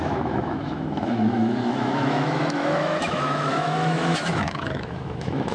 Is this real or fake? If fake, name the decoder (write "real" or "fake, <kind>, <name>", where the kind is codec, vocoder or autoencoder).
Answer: fake, autoencoder, DAC-VAE